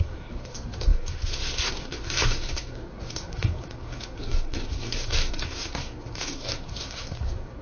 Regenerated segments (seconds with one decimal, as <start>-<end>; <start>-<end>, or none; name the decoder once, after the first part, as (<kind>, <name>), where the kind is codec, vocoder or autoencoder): 0.0-7.6 (codec, SNAC)